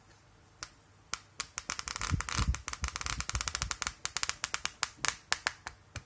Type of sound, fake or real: real